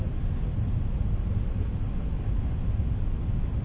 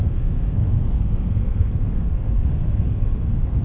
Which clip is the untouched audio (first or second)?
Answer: first